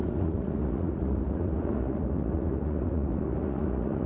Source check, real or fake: fake